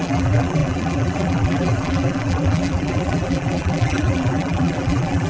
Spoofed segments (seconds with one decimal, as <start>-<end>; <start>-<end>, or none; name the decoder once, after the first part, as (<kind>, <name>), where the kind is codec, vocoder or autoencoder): 0.0-5.3 (vocoder, BigVGAN v2)